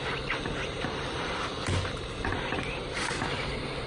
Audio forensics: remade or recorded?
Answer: recorded